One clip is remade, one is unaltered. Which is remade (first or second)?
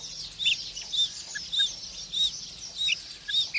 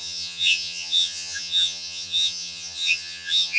second